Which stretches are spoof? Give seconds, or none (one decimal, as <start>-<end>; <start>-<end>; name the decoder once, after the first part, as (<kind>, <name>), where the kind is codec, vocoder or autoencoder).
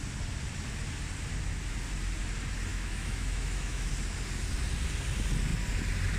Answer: 2.7-3.9 (autoencoder, DAC-VAE)